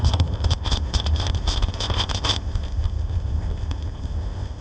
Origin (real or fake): fake